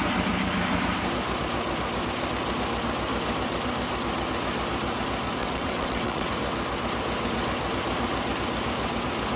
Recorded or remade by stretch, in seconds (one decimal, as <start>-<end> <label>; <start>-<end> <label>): 0.0-5.4 recorded; 5.4-6.3 remade; 6.3-9.4 recorded